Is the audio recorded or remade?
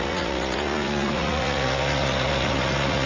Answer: remade